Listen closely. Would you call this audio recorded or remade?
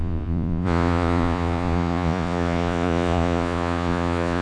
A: remade